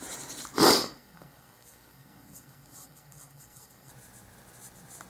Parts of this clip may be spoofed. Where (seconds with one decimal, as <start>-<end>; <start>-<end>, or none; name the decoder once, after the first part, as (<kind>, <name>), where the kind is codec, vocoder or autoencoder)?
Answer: 0.8-3.9 (codec, SNAC)